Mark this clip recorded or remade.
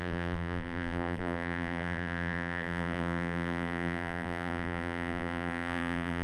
remade